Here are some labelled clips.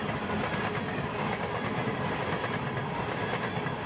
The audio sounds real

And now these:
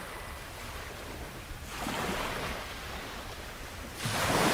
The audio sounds real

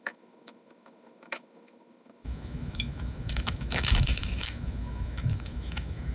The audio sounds fake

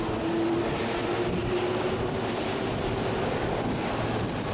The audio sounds real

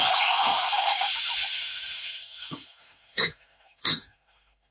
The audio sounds fake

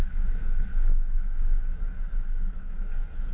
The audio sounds fake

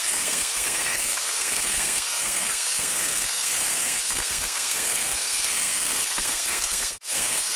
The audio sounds fake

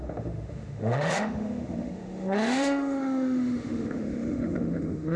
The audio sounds fake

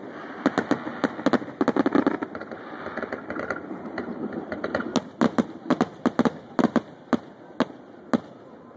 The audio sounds real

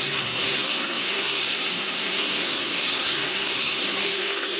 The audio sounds fake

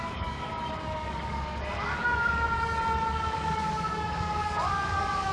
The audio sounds fake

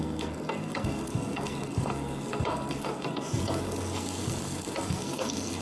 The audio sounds fake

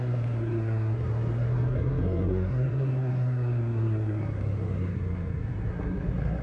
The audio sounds fake